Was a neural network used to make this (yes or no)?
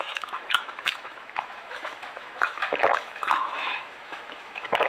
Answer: yes